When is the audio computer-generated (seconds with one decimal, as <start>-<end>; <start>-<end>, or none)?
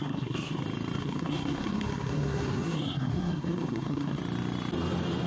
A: 0.0-0.6; 1.0-4.2